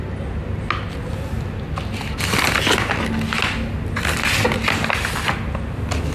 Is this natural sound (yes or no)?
yes